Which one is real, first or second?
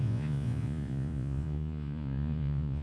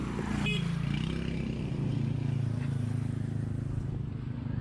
second